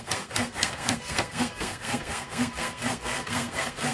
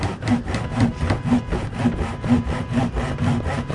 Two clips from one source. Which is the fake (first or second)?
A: first